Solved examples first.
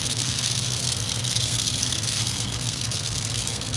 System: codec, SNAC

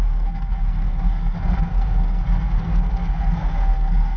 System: codec, SNAC